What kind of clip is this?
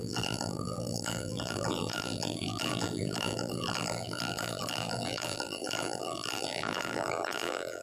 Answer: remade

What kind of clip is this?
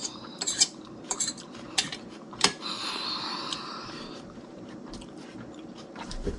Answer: remade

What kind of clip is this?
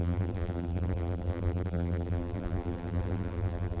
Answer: remade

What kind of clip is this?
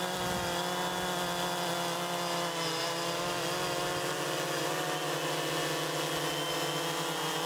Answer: recorded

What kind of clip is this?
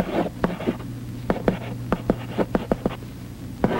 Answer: recorded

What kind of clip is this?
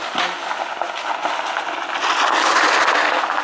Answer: recorded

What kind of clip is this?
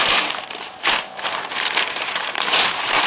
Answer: remade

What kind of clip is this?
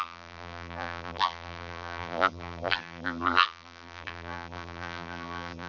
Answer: remade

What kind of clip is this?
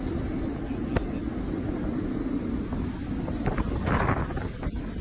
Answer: recorded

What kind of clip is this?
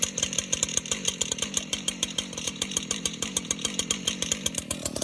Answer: remade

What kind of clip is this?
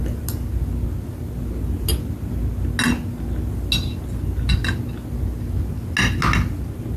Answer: recorded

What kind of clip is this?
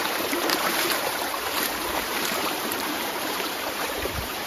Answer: remade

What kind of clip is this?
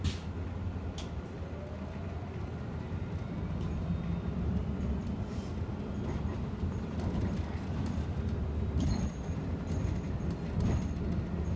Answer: recorded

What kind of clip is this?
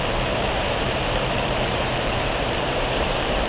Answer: remade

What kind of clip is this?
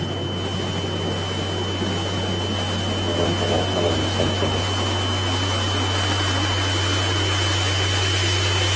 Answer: recorded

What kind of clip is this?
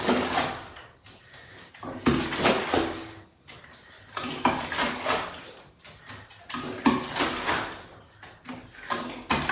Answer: recorded